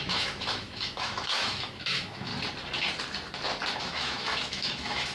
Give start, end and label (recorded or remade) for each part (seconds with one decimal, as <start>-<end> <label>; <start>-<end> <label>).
0.0-2.3 remade; 2.3-3.8 recorded; 3.8-5.1 remade